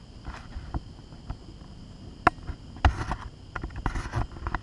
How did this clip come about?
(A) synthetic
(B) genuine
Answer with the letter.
B